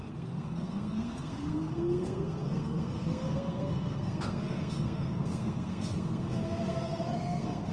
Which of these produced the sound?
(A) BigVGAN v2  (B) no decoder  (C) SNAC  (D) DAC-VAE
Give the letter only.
C